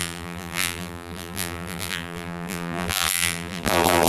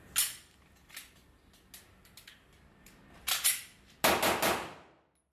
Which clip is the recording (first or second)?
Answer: second